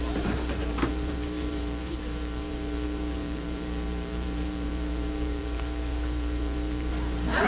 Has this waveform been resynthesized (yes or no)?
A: yes